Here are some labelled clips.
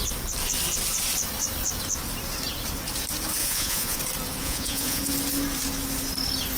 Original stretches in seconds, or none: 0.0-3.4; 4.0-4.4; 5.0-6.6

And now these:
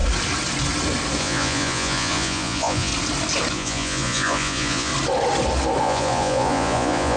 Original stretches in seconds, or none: 0.0-1.2; 2.9-3.5; 4.9-5.8

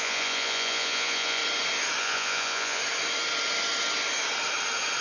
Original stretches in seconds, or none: 1.4-2.0; 2.8-5.0